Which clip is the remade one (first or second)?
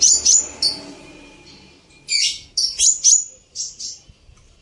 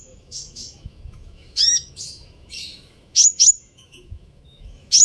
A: second